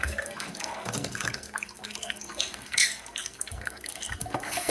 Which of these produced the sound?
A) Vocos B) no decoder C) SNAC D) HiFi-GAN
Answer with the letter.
C